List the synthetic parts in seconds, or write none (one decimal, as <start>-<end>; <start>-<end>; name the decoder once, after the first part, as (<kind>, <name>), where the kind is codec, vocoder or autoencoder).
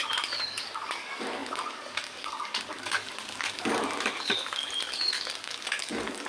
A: 0.0-6.3 (codec, DAC)